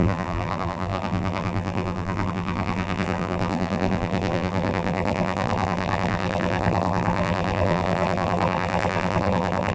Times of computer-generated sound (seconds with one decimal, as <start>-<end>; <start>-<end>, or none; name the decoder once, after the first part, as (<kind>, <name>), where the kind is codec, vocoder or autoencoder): 0.0-9.7 (vocoder, BigVGAN v2)